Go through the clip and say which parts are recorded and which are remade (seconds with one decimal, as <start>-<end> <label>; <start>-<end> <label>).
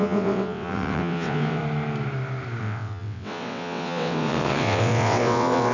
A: 0.0-1.6 remade; 1.6-2.6 recorded; 2.6-5.7 remade